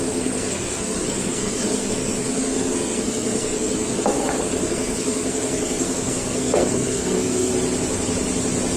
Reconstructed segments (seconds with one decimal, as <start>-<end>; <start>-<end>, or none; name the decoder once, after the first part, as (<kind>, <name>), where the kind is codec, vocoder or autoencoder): 0.0-7.5 (codec, SNAC)